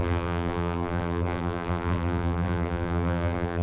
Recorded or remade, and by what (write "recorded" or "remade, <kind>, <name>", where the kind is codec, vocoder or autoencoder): remade, vocoder, BigVGAN v2